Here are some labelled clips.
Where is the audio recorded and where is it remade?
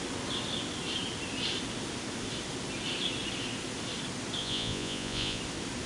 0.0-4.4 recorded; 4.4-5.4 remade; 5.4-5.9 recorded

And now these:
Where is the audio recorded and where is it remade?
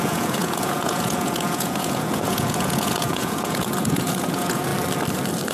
0.0-4.7 remade; 4.7-5.5 recorded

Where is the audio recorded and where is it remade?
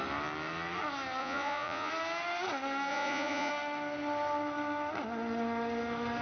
0.0-1.2 recorded; 1.2-1.9 remade; 1.9-2.9 recorded; 2.9-3.5 remade; 3.5-6.2 recorded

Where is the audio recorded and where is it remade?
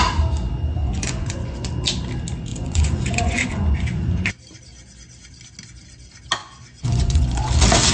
0.0-0.8 recorded; 0.8-1.7 remade; 1.7-2.5 recorded; 2.5-4.3 remade; 4.3-6.4 recorded; 6.4-7.5 remade; 7.5-7.9 recorded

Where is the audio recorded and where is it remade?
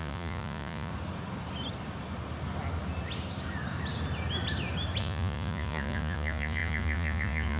0.0-0.9 remade; 0.9-5.0 recorded; 5.0-7.6 remade